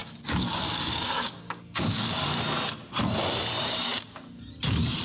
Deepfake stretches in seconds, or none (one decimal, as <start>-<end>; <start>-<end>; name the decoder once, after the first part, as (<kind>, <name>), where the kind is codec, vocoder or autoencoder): 0.0-2.2 (codec, DAC); 3.6-4.1